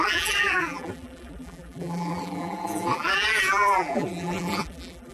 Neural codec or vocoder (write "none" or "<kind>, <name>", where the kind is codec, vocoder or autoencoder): vocoder, BigVGAN v2